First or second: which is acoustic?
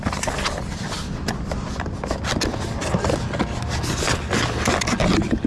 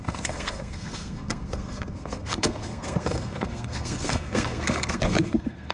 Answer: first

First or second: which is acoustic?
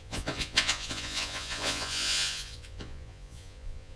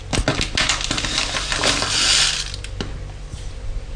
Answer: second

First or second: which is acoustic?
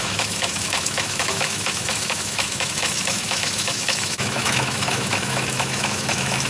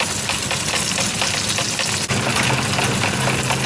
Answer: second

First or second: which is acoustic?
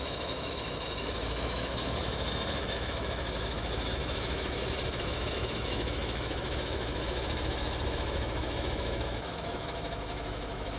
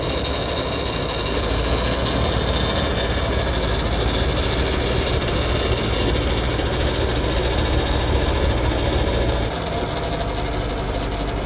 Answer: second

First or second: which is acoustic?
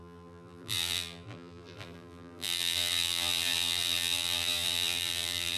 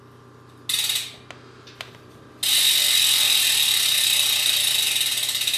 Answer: second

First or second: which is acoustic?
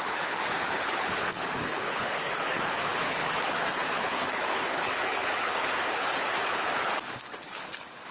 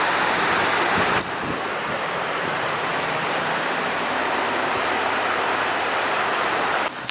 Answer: second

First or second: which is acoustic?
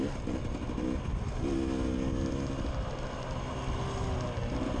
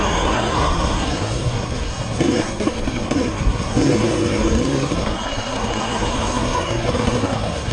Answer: first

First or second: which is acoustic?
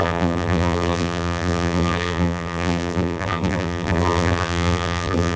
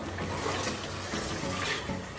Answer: second